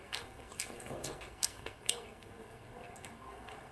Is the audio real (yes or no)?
no